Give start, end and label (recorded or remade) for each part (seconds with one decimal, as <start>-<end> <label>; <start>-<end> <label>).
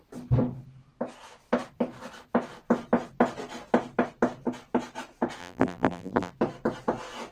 0.0-5.4 recorded; 5.4-6.3 remade; 6.3-7.3 recorded